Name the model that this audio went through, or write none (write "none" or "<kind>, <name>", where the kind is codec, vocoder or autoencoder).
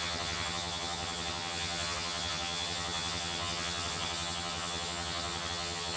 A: vocoder, HiFi-GAN